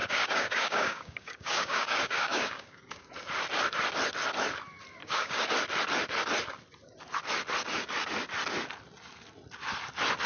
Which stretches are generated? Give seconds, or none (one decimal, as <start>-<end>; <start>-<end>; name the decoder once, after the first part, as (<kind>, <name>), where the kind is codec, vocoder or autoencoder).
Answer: 0.0-3.1 (codec, DAC); 5.0-5.5